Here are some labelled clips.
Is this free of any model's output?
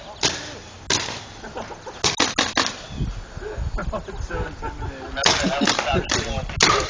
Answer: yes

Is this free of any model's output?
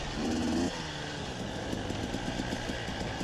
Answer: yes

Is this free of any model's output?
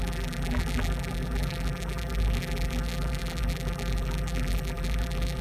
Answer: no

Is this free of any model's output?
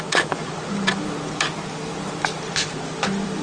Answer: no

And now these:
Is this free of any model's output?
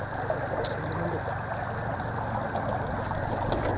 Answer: yes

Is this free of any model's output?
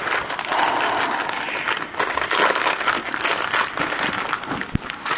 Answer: yes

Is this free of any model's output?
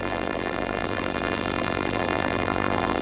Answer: no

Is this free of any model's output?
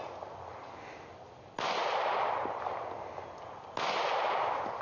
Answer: yes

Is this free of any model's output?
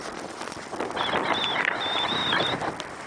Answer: yes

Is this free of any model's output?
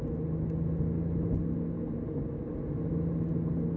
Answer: yes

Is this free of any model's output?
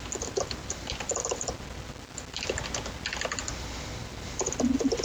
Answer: yes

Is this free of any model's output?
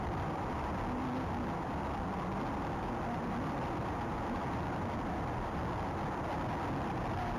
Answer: no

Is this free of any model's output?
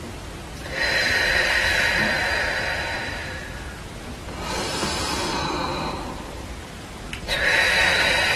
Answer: no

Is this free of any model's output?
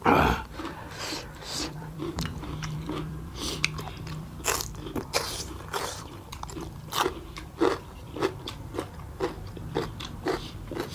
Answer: no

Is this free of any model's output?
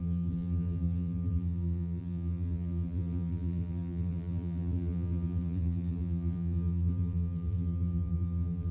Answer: no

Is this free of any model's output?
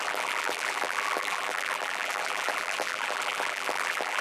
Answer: no